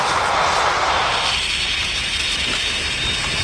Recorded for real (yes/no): yes